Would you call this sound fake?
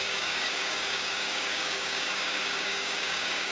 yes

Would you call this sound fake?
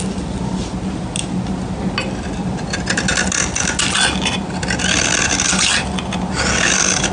no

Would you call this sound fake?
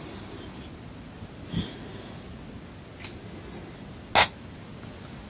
no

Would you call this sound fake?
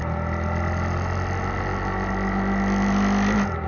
no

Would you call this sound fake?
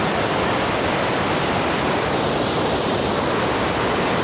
no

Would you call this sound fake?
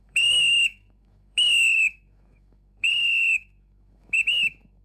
yes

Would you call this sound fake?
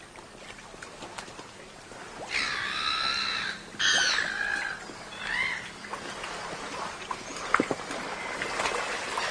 no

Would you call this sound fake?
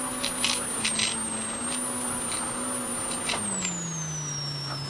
no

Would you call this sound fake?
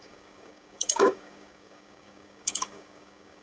yes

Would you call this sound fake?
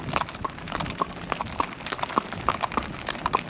no